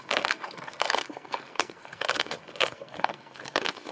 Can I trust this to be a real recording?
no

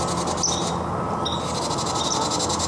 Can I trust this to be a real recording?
yes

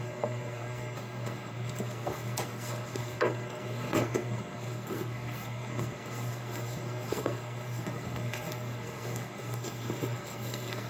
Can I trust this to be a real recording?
no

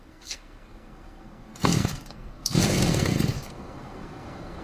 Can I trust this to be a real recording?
no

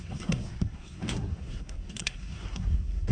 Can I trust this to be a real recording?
no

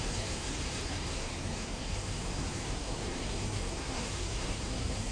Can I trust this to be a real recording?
no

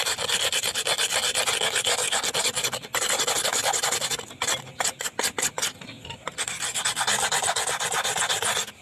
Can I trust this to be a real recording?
yes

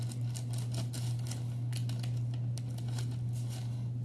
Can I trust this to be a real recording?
yes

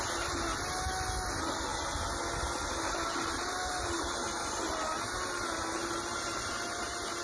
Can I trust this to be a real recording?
yes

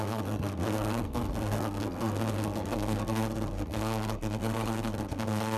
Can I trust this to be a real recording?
no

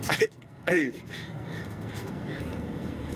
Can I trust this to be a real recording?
no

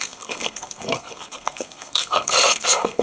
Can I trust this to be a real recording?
no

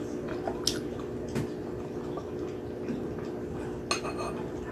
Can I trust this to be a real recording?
yes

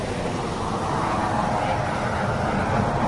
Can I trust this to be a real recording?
yes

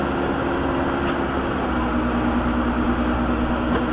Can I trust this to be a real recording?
yes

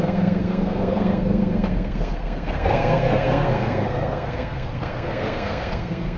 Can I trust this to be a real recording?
no